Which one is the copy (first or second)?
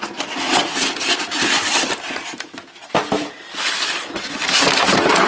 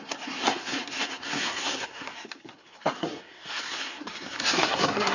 second